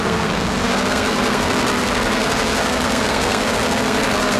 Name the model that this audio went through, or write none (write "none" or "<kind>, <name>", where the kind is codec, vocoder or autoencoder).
codec, SNAC